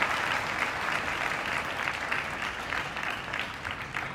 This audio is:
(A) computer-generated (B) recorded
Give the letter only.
B